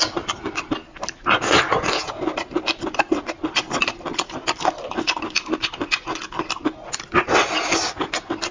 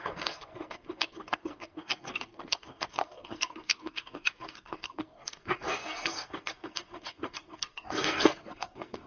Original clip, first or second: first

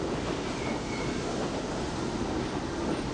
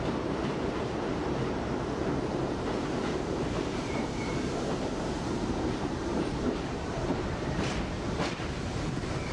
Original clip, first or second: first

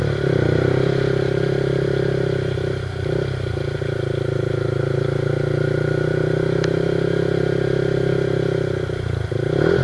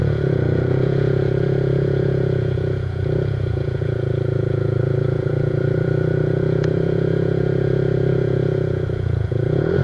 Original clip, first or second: first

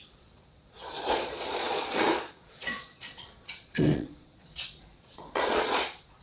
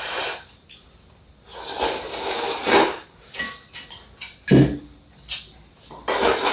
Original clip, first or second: second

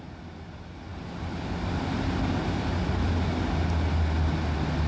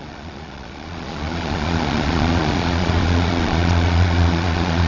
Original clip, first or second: first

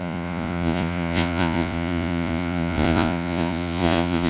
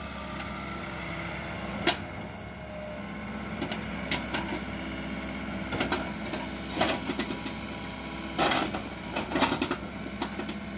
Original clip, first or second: second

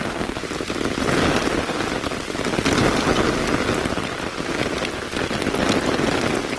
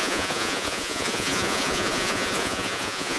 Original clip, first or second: first